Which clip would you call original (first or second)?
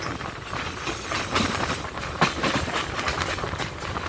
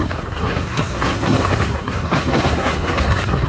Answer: first